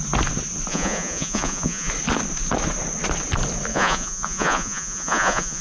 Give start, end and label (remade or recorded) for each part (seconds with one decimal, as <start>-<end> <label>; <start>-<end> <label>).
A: 0.0-0.7 recorded; 0.7-1.9 remade; 1.9-3.7 recorded; 3.7-5.6 remade